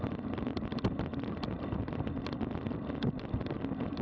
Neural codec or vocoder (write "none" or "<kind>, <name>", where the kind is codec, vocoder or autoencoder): none